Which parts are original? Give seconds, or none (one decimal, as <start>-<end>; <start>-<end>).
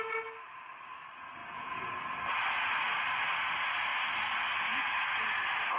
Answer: 0.0-1.4; 1.9-5.8